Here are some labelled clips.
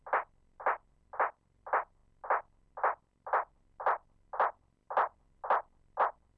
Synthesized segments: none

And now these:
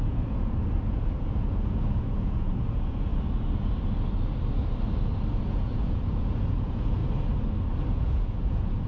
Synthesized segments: 0.0-3.1 (vocoder, Vocos); 5.4-7.0; 7.8-8.9

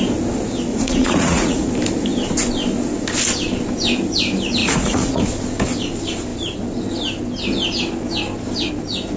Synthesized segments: 0.7-1.7 (vocoder, Vocos); 4.6-5.2

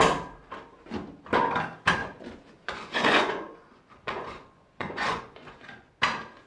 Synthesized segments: 2.0-5.9 (vocoder, Vocos)

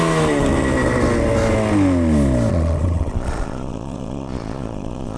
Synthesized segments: 2.5-5.2 (vocoder, Vocos)

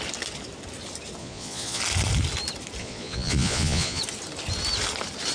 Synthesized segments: 1.2-1.8 (vocoder, Vocos); 2.8-4.0